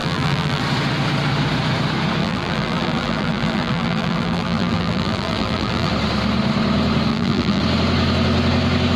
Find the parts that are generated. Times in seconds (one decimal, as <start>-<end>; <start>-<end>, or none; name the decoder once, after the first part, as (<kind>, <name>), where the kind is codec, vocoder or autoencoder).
0.0-0.6 (vocoder, BigVGAN v2); 2.2-5.9; 7.1-7.6